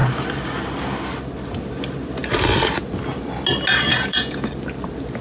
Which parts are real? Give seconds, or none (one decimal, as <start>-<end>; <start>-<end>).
0.0-3.9; 4.5-5.2